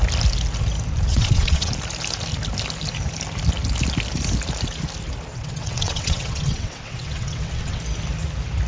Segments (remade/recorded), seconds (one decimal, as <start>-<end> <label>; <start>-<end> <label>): 0.0-1.1 recorded; 1.1-1.7 remade; 1.7-5.3 recorded; 5.3-7.8 remade; 7.8-8.7 recorded